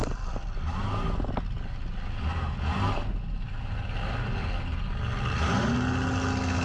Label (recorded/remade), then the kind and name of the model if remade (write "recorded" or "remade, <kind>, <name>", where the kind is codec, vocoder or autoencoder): recorded